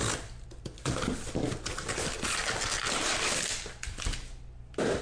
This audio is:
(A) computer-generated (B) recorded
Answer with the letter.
B